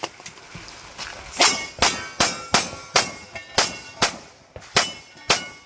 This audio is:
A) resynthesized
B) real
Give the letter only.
B